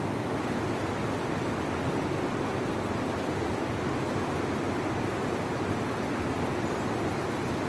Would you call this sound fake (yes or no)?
no